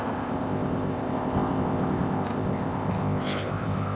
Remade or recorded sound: remade